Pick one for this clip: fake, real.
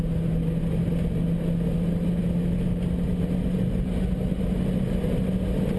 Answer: real